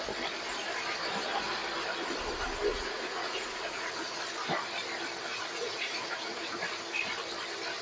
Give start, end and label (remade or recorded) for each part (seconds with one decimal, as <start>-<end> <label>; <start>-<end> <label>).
0.0-2.7 recorded; 2.7-4.2 remade; 4.2-5.3 recorded; 5.3-6.6 remade; 6.6-7.8 recorded